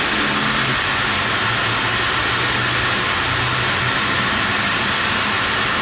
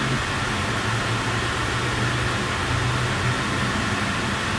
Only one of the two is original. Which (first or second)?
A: second